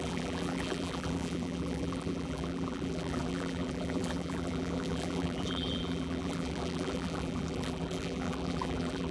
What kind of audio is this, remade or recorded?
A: remade